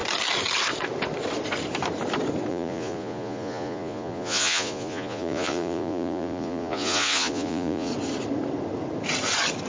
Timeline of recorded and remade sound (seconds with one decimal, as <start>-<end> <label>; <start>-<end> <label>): 0.0-2.5 recorded; 2.5-7.9 remade; 7.9-9.7 recorded